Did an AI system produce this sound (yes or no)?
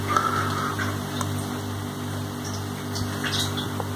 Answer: no